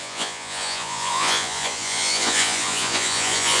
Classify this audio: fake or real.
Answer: fake